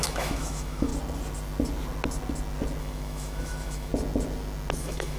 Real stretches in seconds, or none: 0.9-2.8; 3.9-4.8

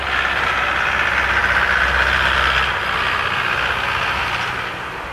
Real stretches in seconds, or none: 0.0-5.1

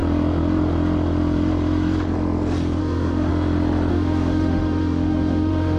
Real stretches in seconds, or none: 0.0-2.8; 3.3-3.9

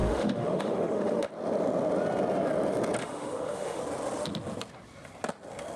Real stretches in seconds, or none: 1.3-3.0; 3.8-5.8

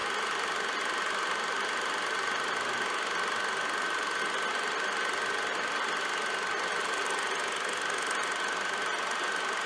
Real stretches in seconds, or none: 0.0-9.7

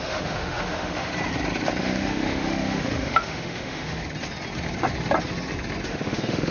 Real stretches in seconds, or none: 1.1-1.8; 4.0-5.9

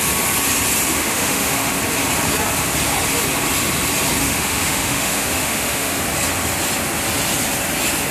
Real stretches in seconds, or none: 0.0-0.9; 1.7-4.2; 6.0-8.1

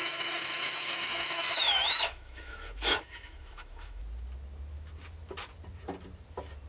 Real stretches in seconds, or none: 4.0-6.7